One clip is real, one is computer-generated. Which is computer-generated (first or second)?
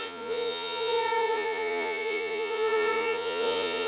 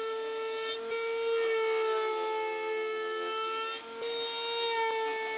first